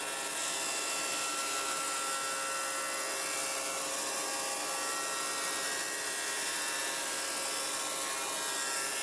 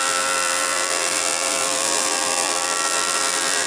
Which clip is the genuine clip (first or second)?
first